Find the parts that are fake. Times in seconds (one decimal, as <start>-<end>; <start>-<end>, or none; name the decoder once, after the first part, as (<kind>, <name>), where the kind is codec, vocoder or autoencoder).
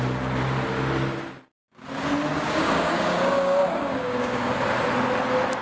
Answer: 2.3-4.5 (codec, DAC)